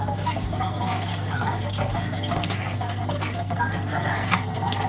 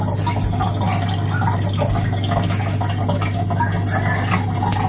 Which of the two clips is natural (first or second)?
second